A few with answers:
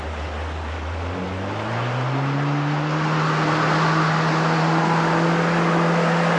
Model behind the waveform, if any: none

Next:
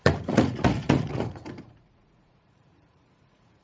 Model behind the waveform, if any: vocoder, Vocos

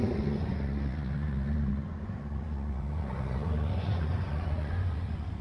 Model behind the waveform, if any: vocoder, Vocos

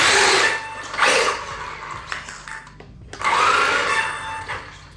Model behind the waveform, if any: none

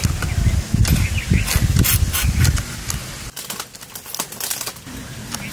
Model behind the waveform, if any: none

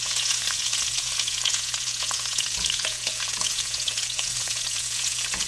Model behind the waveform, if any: vocoder, Vocos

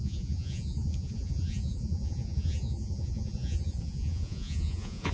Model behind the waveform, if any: vocoder, Vocos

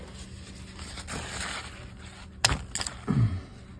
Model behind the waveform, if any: none